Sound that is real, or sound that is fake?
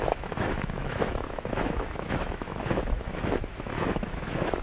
fake